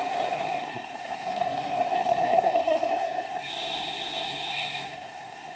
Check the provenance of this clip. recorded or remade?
remade